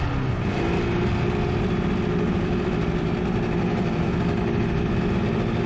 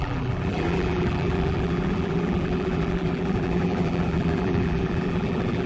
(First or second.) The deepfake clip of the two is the second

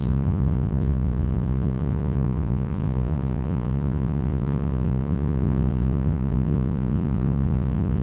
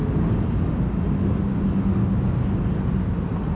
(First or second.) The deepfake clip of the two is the first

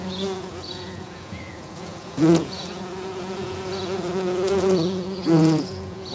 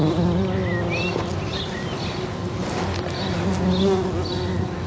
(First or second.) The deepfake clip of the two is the first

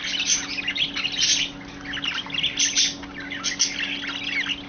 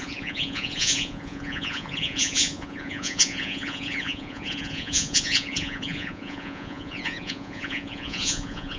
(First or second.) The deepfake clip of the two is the second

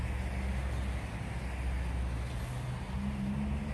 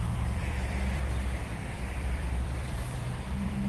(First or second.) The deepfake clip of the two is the second